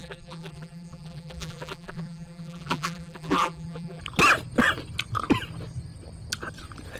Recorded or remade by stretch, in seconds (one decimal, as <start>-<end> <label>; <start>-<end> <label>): 0.0-4.0 remade; 4.0-7.0 recorded